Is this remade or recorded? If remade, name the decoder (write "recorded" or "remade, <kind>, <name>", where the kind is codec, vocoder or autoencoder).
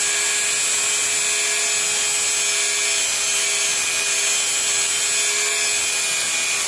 recorded